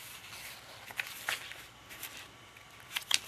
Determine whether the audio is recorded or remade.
recorded